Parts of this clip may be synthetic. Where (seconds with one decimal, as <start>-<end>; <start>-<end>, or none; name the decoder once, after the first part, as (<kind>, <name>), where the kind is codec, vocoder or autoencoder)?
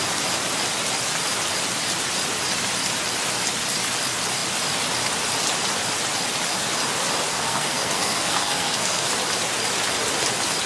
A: 7.3-9.1 (codec, SNAC)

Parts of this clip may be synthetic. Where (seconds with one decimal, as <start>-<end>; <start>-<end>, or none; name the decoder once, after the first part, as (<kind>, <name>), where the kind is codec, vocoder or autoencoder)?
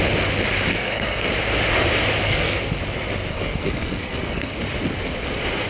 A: 0.7-1.3 (codec, SNAC); 2.2-2.8; 3.3-4.6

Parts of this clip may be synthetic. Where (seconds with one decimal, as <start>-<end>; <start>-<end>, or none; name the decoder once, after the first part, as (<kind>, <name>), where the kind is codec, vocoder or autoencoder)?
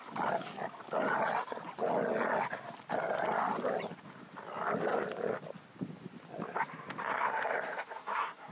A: 7.0-8.5 (codec, SNAC)